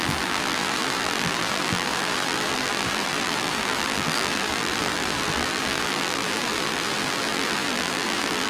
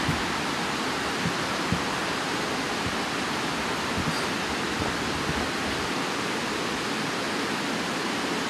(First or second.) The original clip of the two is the second